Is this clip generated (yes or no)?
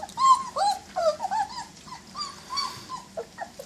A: no